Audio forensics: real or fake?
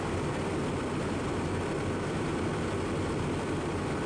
real